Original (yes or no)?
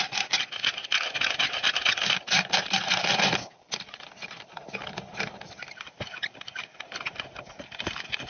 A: yes